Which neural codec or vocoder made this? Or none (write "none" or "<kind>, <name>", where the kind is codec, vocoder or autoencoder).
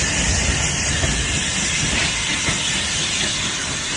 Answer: none